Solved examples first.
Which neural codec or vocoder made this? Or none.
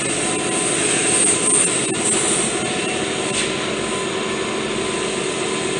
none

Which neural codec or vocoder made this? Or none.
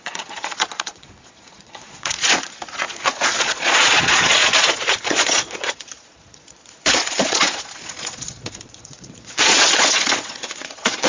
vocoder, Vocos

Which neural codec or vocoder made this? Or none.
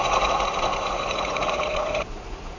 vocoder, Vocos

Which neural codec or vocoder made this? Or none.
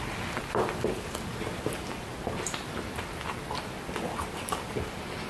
none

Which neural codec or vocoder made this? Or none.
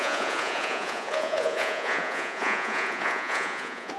vocoder, Vocos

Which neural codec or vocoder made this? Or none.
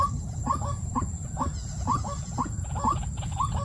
vocoder, Vocos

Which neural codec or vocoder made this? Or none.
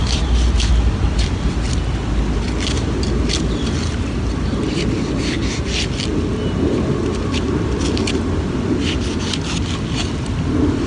none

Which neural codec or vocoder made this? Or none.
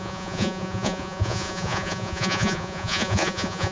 vocoder, Vocos